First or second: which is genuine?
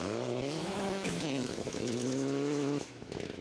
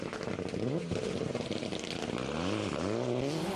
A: second